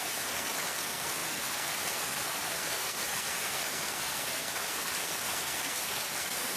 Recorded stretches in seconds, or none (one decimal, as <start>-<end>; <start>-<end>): none